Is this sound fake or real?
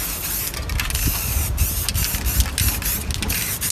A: real